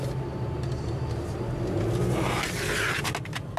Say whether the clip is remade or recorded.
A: recorded